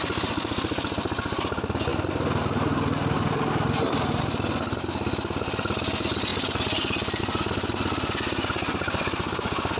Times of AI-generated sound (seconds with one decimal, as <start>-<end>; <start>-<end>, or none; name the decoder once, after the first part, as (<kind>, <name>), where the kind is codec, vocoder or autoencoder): none